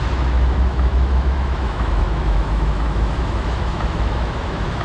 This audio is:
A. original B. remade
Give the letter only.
B